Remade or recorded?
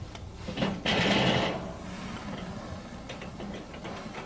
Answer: recorded